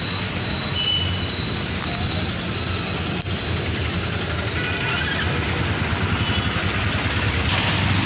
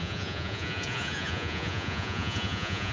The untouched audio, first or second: first